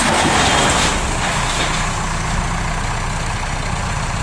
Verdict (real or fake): real